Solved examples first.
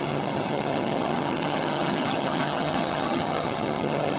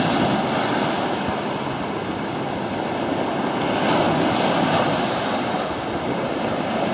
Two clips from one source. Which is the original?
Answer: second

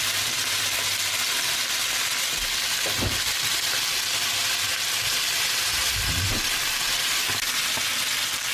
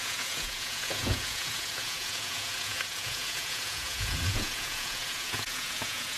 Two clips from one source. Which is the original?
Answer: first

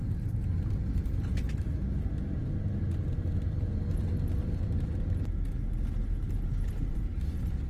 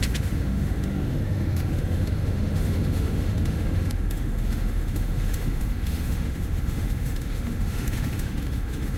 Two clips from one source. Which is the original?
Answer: first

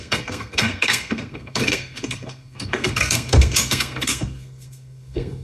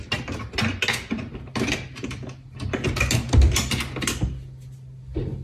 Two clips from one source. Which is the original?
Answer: second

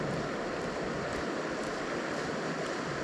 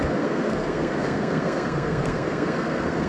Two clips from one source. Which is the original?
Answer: first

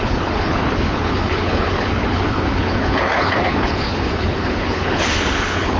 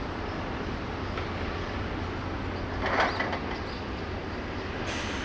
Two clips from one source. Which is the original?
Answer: second